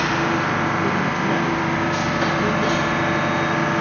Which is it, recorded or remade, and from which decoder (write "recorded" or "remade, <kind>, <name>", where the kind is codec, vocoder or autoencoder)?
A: recorded